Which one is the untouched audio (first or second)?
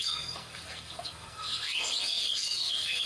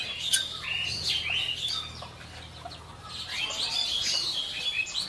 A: second